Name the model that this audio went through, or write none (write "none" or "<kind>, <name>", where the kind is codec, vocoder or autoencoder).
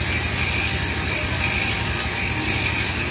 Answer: none